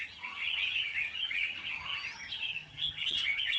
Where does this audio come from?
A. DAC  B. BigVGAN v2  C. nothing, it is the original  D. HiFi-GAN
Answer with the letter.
D